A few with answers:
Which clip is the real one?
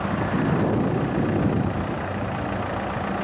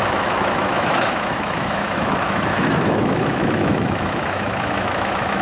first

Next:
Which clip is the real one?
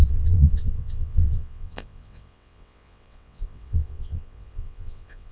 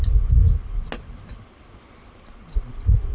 second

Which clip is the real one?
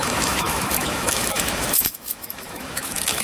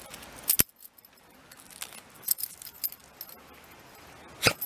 second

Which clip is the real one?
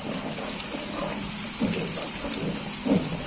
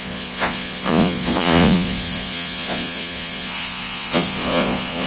first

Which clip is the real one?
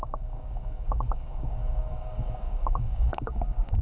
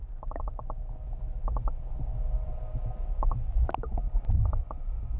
second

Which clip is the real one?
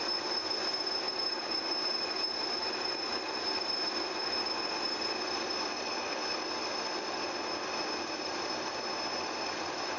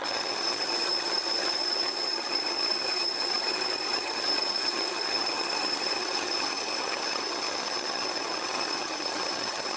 first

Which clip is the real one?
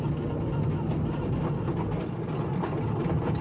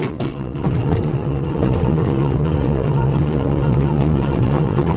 first